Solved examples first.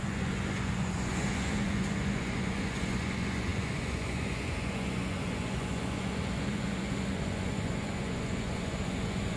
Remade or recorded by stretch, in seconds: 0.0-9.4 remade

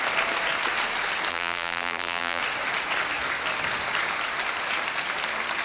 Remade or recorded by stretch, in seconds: 0.0-1.3 recorded; 1.3-2.4 remade; 2.4-5.6 recorded

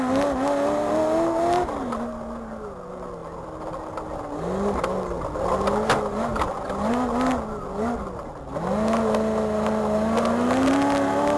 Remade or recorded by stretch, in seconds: 0.0-11.4 recorded

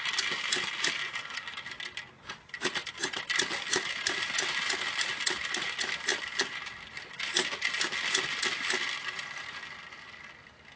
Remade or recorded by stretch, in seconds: 0.0-10.8 recorded

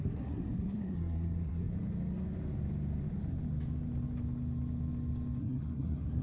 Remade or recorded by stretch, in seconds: 0.0-1.7 remade; 1.7-5.4 recorded; 5.4-6.2 remade

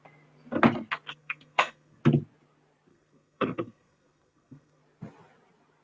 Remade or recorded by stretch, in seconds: 0.0-1.1 recorded; 1.1-2.0 remade; 2.0-2.9 recorded; 2.9-4.8 remade; 4.8-5.8 recorded

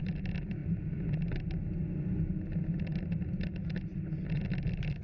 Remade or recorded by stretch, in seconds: 0.0-5.0 recorded

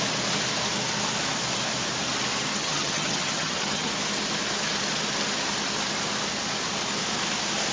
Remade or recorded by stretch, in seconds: 0.0-2.5 recorded; 2.5-3.9 remade; 3.9-7.7 recorded